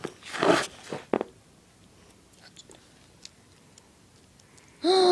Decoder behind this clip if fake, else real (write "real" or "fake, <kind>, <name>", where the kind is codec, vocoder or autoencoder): real